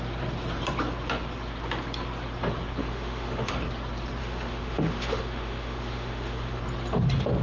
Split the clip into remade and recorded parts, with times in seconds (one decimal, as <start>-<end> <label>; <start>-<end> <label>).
0.0-2.8 recorded; 2.8-3.5 remade; 3.5-4.2 recorded; 4.2-6.6 remade; 6.6-7.4 recorded